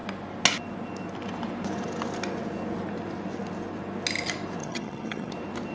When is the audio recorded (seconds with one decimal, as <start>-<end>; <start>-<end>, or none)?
0.0-4.6; 5.3-5.7